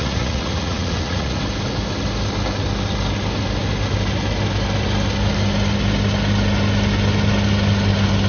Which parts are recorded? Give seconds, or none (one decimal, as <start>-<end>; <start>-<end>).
1.4-8.3